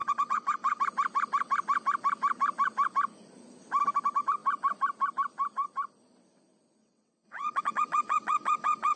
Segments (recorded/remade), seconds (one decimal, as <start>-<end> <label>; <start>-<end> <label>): 0.0-0.8 remade; 0.8-6.8 recorded; 6.8-9.0 remade